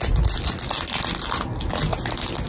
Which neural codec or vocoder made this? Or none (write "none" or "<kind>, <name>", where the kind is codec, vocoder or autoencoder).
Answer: none